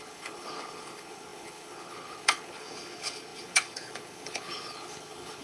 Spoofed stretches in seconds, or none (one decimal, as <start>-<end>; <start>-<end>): 0.0-5.4